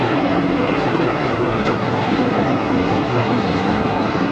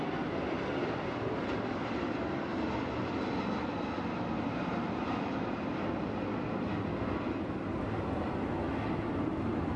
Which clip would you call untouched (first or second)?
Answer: second